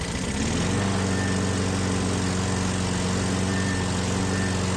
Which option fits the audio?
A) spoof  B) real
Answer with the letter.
B